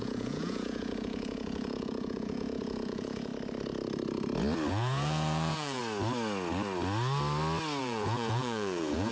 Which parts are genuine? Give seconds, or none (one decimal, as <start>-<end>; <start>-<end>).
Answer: 3.3-4.7; 5.8-7.8

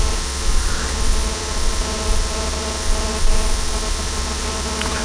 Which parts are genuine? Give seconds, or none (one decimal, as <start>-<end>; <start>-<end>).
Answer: none

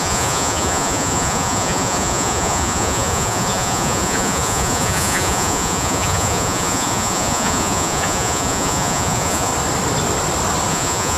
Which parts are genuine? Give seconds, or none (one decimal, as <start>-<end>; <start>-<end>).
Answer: 9.5-10.7

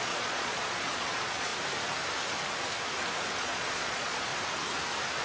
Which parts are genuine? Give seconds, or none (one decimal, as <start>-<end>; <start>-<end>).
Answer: 1.5-3.3; 4.3-5.2